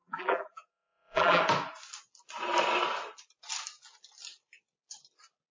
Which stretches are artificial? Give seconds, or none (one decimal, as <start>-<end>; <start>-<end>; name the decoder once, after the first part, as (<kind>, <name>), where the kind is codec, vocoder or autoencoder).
0.0-1.4 (vocoder, BigVGAN v2)